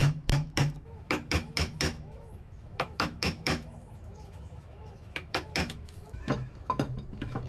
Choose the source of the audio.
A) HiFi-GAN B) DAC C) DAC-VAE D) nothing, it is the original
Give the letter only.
C